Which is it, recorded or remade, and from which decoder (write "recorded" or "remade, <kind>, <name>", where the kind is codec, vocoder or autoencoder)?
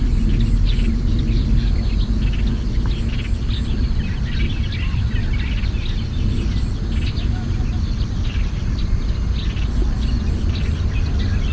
recorded